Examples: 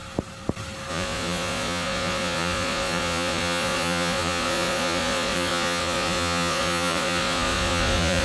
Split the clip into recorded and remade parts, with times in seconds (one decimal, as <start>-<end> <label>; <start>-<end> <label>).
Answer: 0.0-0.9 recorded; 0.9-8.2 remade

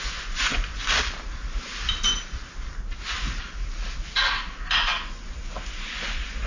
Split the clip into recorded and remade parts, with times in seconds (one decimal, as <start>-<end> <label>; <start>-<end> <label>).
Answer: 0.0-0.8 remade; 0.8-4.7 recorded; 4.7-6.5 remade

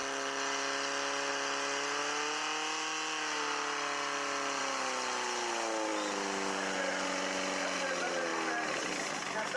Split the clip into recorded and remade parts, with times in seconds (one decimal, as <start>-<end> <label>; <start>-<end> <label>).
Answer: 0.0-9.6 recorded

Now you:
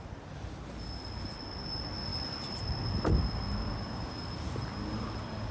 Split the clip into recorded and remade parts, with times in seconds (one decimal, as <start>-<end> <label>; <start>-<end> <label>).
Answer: 0.0-5.5 recorded

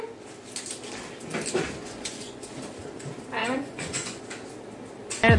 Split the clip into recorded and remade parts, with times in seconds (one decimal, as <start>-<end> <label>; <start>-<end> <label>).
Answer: 0.0-1.8 recorded; 1.8-2.5 remade; 2.5-3.4 recorded; 3.4-4.2 remade; 4.2-5.4 recorded

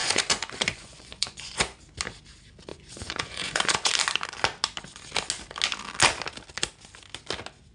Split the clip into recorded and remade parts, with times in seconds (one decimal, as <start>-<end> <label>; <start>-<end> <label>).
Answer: 0.0-1.8 remade; 1.8-2.7 recorded; 2.7-3.9 remade; 3.9-7.7 recorded

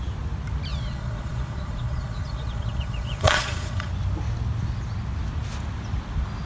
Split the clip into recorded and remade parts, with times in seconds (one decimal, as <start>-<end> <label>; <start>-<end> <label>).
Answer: 0.0-0.7 recorded; 0.7-3.9 remade; 3.9-6.5 recorded

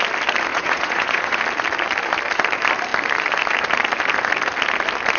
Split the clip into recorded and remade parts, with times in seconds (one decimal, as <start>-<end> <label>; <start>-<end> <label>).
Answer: 0.0-0.5 recorded; 0.5-1.4 remade; 1.4-5.2 recorded